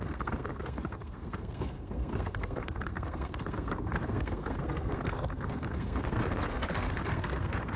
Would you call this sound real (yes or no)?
no